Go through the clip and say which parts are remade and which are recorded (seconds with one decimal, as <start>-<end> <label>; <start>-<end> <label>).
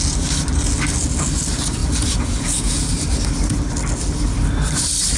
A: 0.0-1.8 recorded; 1.8-2.9 remade; 2.9-5.2 recorded